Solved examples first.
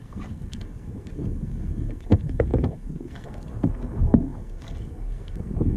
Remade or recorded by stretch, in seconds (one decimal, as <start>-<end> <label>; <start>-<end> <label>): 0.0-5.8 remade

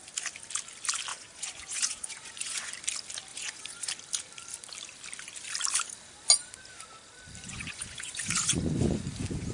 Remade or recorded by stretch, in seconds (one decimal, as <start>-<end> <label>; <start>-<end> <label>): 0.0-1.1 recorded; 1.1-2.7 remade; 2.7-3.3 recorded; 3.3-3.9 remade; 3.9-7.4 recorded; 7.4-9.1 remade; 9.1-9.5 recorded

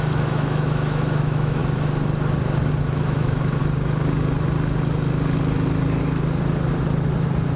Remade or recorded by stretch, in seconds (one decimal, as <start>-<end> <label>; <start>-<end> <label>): 0.0-1.6 remade; 1.6-2.8 recorded; 2.8-3.6 remade; 3.6-7.6 recorded

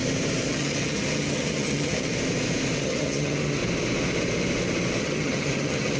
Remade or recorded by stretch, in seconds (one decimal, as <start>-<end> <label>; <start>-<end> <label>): 0.0-0.5 recorded; 0.5-2.1 remade; 2.1-2.8 recorded; 2.8-3.6 remade; 3.6-5.0 recorded; 5.0-6.0 remade

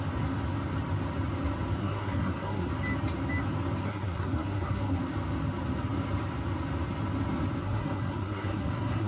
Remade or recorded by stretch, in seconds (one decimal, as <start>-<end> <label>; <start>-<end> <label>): 0.0-1.8 recorded; 1.8-2.7 remade; 2.7-3.8 recorded; 3.8-5.0 remade; 5.0-7.6 recorded; 7.6-9.1 remade

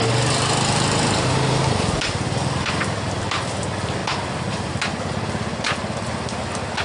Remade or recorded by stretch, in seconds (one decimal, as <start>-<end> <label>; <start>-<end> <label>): 0.0-6.8 recorded